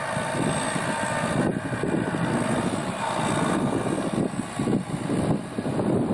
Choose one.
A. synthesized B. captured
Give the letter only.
B